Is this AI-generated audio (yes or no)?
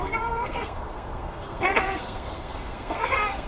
yes